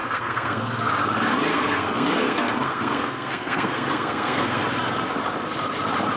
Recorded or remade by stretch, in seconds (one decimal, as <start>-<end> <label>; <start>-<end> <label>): 0.0-0.9 remade; 0.9-1.5 recorded; 1.5-4.6 remade; 4.6-6.2 recorded